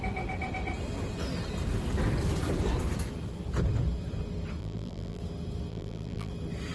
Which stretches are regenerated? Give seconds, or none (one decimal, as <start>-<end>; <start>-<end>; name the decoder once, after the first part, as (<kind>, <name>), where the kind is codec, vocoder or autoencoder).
4.6-5.2 (vocoder, BigVGAN v2); 5.7-6.3